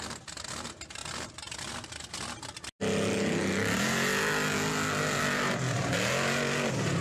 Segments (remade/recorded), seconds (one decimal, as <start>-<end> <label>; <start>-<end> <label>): 0.0-7.0 recorded